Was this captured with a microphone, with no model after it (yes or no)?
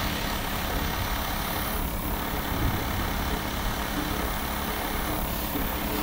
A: yes